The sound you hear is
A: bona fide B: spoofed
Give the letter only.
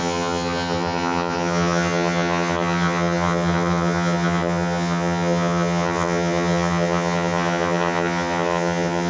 B